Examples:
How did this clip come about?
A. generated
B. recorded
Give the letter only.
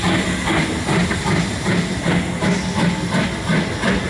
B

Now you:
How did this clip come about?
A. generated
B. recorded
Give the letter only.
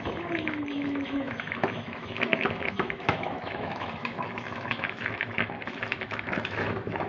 A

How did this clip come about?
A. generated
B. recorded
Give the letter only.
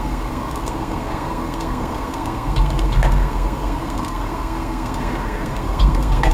A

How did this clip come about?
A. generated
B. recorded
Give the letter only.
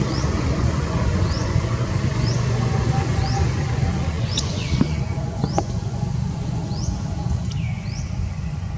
A